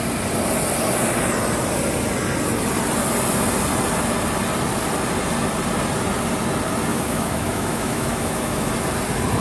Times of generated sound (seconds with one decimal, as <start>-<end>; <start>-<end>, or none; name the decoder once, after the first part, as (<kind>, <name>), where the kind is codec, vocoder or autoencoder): 6.9-8.7 (autoencoder, DAC-VAE)